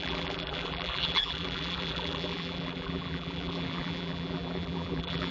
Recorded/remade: remade